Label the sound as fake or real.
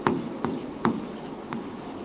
real